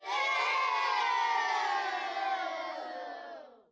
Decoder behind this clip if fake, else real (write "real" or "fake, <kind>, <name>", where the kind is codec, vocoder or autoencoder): real